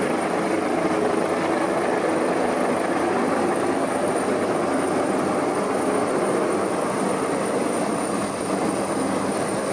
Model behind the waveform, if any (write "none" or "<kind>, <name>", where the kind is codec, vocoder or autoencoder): none